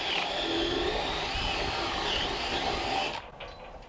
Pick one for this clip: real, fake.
real